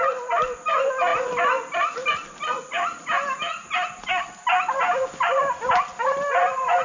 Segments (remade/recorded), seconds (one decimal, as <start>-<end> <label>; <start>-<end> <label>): 0.0-6.8 recorded